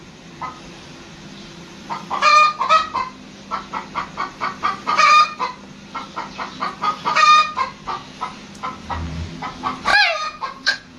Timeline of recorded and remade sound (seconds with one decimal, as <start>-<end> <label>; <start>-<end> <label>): 0.0-9.9 recorded; 9.9-11.0 remade